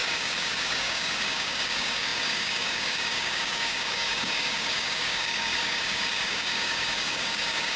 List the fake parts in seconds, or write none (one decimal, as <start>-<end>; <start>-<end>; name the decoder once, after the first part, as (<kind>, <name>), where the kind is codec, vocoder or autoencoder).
0.0-7.8 (codec, DAC)